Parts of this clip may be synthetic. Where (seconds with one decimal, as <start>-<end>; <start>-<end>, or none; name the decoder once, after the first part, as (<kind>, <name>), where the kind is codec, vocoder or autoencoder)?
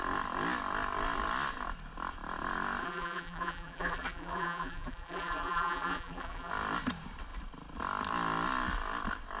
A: 2.8-6.5 (vocoder, BigVGAN v2)